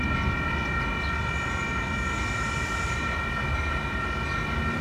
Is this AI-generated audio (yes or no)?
no